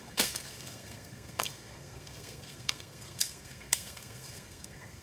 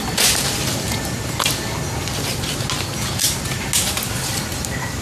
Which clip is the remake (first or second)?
first